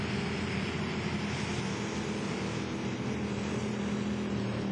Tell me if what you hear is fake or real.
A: real